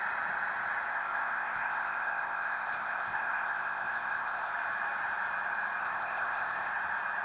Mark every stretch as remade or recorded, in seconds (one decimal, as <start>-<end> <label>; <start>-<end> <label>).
0.0-0.9 recorded; 0.9-4.5 remade; 4.5-5.8 recorded; 5.8-6.7 remade; 6.7-7.2 recorded